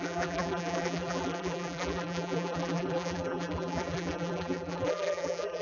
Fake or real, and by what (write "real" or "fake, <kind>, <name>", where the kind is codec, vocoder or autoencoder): fake, vocoder, BigVGAN v2